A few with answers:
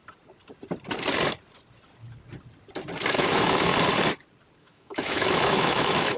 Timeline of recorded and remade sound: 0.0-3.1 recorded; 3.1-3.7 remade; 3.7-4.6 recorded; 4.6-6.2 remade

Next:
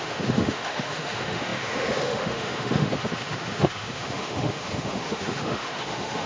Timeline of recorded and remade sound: 0.0-6.3 remade

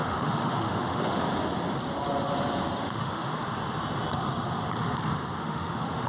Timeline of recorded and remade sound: 0.0-1.2 remade; 1.2-2.8 recorded; 2.8-3.4 remade; 3.4-5.4 recorded; 5.4-6.1 remade

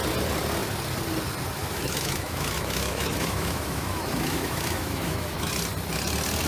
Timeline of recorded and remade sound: 0.0-1.6 recorded; 1.6-5.5 remade; 5.5-6.5 recorded

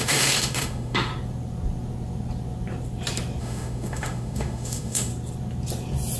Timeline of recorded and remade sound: 0.0-1.1 remade; 1.1-3.4 recorded; 3.4-5.1 remade; 5.1-6.2 recorded

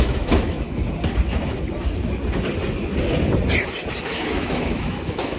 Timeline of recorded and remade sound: 0.0-0.8 remade; 0.8-4.0 recorded; 4.0-5.4 remade

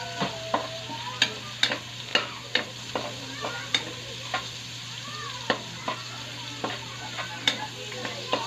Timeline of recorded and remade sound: 0.0-8.5 recorded